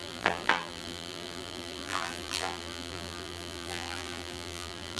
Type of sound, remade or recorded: remade